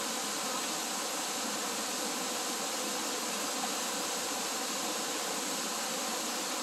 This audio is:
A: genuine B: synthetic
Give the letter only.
A